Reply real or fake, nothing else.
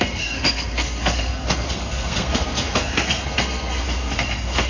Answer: fake